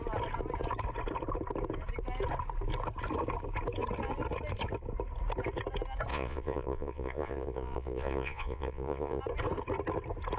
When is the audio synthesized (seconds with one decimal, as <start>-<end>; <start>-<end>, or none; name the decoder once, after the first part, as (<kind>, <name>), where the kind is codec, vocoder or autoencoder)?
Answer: 6.1-9.2 (vocoder, Vocos)